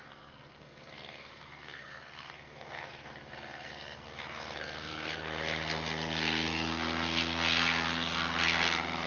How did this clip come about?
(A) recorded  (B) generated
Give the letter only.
B